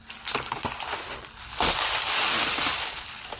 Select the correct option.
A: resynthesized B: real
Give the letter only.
B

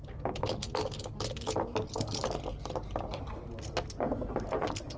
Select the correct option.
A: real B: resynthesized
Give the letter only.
A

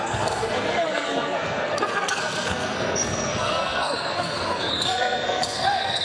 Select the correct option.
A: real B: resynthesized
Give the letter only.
B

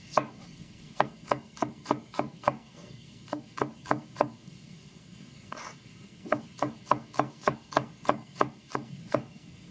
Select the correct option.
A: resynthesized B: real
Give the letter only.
A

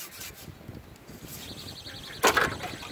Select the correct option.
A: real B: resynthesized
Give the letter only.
A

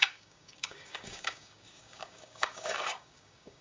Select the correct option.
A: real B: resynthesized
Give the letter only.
B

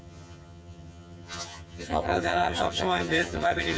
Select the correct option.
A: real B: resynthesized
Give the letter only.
B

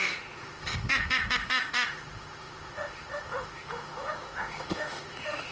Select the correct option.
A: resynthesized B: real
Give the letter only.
A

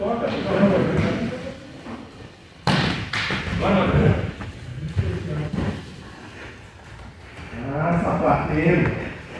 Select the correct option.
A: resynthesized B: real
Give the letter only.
B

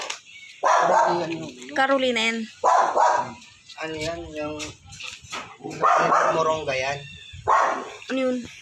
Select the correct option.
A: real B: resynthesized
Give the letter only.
A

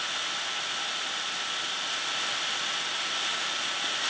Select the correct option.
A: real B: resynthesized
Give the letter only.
A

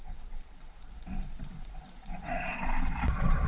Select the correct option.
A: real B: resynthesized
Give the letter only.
B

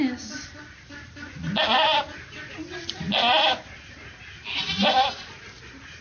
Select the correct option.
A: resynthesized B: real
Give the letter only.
B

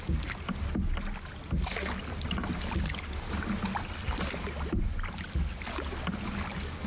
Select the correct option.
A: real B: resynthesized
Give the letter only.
A